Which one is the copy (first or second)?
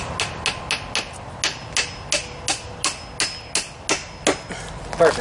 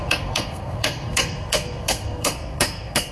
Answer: second